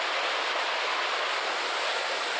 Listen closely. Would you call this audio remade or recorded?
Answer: recorded